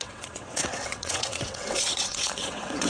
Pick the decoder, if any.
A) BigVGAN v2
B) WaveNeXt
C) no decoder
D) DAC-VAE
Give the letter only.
B